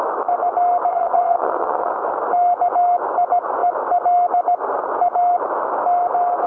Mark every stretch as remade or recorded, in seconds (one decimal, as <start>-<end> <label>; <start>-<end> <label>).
0.0-0.9 recorded; 0.9-1.9 remade; 1.9-6.5 recorded